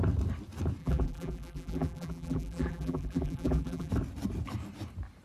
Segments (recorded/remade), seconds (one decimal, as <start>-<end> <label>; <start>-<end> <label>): 0.0-0.8 recorded; 0.8-3.9 remade; 3.9-5.2 recorded